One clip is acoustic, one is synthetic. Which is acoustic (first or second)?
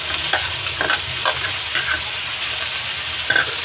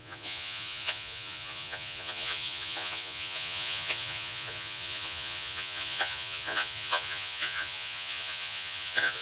first